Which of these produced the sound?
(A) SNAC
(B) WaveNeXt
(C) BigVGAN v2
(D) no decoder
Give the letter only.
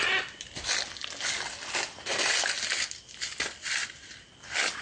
D